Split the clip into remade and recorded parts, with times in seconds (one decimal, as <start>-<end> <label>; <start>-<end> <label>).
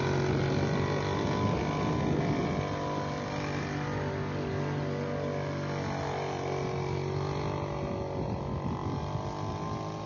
0.0-10.1 recorded